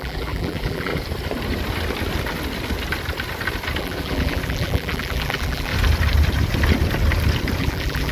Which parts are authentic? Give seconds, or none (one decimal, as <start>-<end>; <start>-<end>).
0.9-3.8; 5.7-7.6